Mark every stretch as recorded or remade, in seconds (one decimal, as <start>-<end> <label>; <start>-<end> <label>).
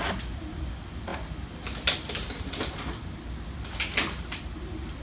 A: 0.0-5.0 recorded